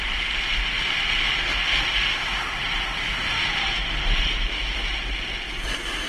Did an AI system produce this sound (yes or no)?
no